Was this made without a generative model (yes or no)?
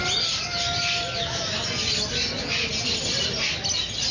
yes